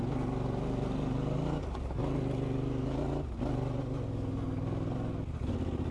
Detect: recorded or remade recorded